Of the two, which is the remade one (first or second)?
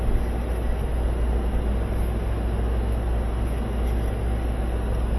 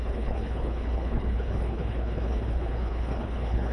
second